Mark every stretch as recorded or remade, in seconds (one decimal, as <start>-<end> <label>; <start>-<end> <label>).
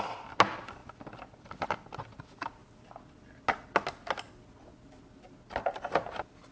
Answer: 0.0-6.5 recorded